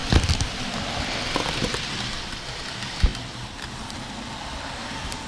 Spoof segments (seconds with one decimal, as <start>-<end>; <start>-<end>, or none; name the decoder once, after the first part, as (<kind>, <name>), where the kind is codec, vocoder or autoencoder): 0.0-5.3 (vocoder, BigVGAN v2)